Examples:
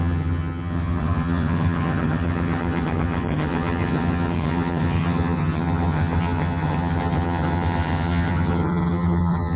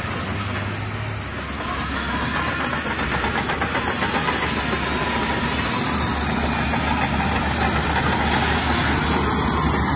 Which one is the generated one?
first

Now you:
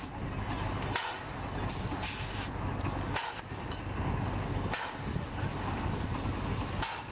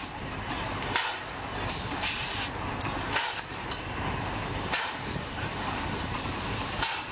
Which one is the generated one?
second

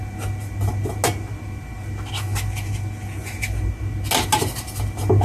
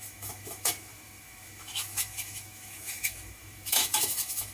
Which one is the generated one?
second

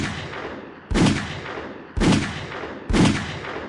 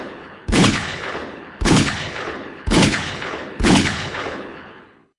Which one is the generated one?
second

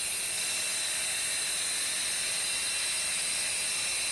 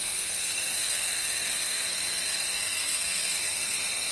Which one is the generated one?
second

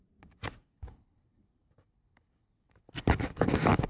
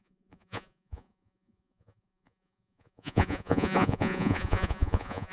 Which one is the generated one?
second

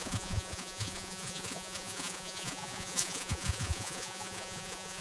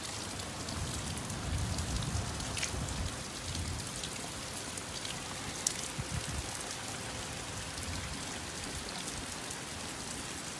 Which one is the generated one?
first